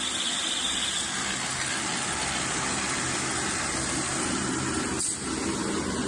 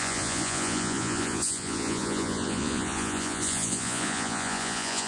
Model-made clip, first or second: second